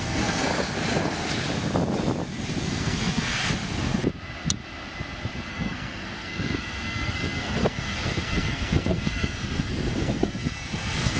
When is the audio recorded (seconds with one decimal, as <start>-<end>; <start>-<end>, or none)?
0.5-2.6; 3.4-5.5